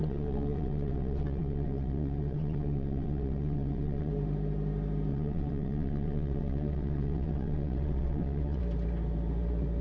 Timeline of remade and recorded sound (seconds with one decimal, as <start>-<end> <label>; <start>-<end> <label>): 0.0-4.1 remade; 4.1-5.1 recorded; 5.1-8.6 remade; 8.6-9.8 recorded